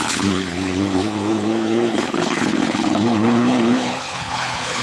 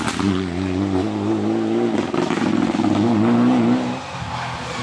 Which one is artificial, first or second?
first